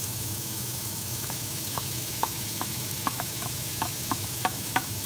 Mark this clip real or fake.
fake